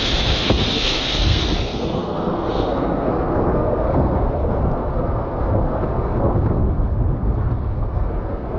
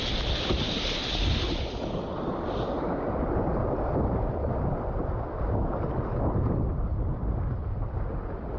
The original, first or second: second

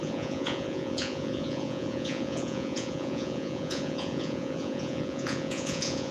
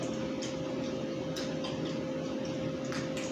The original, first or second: second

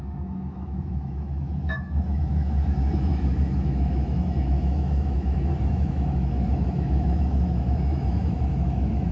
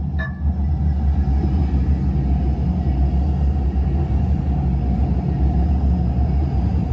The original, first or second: second